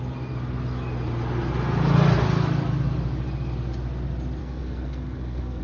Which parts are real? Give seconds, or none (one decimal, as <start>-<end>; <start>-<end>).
0.0-4.4